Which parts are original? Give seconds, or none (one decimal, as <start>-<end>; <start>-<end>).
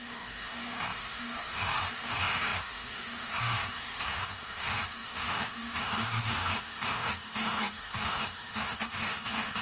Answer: none